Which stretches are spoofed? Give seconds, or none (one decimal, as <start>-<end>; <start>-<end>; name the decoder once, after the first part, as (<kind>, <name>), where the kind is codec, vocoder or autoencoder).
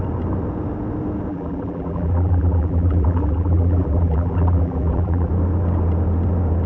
1.3-5.3 (vocoder, BigVGAN v2)